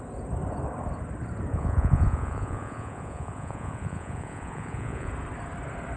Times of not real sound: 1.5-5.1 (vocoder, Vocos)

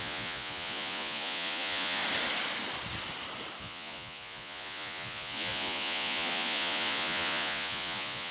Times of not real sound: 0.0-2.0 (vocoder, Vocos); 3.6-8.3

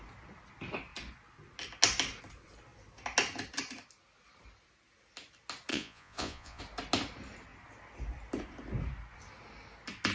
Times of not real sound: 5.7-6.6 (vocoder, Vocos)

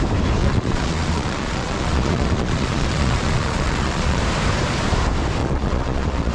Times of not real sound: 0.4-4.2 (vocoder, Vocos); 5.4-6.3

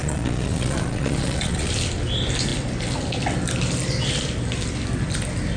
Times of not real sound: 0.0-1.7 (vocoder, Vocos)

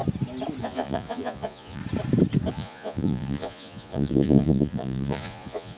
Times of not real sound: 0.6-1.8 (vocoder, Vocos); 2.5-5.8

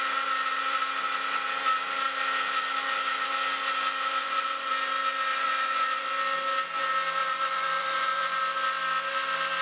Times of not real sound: 4.2-4.7 (vocoder, Vocos); 5.3-6.1; 7.2-8.4